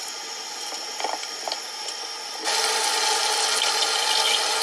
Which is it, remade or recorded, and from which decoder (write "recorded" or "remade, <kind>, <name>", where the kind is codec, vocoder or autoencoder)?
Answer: recorded